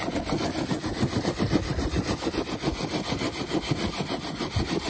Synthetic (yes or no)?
no